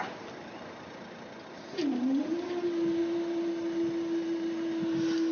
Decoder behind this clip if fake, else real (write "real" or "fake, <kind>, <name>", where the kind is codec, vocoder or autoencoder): real